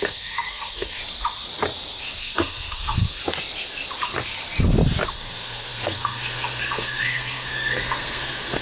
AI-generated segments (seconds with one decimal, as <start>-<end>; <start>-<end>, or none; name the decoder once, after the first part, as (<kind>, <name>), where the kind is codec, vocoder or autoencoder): 0.0-1.0 (codec, SNAC); 2.2-3.2; 5.1-8.6